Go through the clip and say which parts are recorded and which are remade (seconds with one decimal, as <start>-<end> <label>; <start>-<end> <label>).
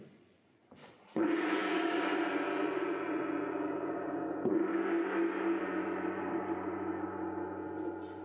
0.0-4.7 remade; 4.7-5.6 recorded; 5.6-8.2 remade